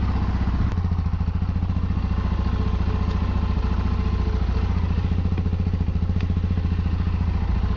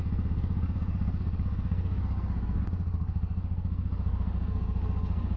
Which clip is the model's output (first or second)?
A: second